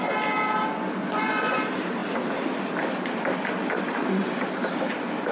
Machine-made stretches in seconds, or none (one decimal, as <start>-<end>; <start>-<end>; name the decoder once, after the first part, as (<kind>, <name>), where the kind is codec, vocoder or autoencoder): 1.0-1.6 (vocoder, Vocos)